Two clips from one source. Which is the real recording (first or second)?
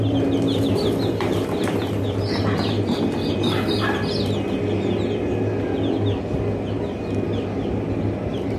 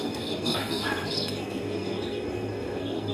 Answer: first